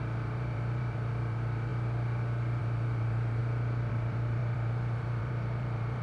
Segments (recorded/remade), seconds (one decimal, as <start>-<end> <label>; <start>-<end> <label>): 0.0-1.7 remade; 1.7-2.6 recorded; 2.6-3.4 remade; 3.4-3.9 recorded; 3.9-6.0 remade